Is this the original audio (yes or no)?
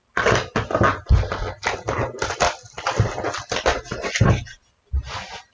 yes